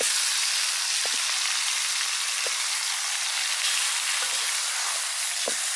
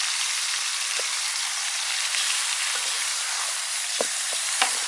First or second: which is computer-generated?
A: second